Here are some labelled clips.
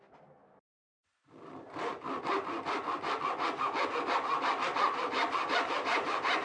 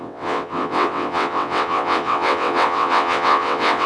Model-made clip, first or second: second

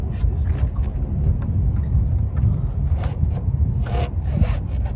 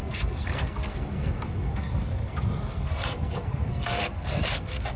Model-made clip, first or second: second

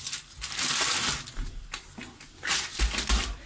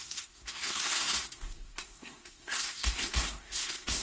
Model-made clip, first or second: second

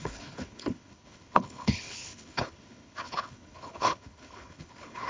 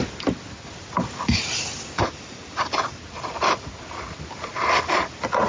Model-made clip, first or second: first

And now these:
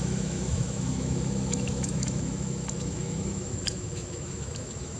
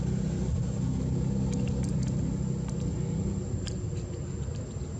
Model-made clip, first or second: first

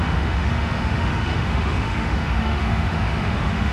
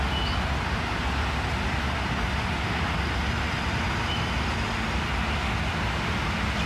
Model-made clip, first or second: first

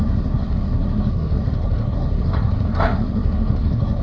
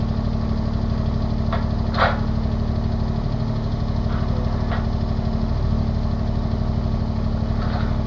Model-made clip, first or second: first